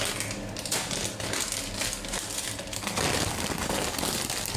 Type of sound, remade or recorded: recorded